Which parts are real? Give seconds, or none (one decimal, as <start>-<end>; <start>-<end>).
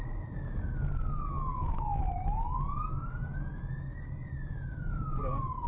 0.0-1.6; 2.1-5.7